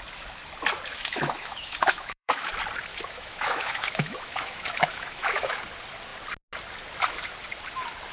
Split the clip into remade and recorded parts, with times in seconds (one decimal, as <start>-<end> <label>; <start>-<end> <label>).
0.0-0.9 recorded; 0.9-2.5 remade; 2.5-2.9 recorded; 2.9-5.6 remade; 5.6-8.1 recorded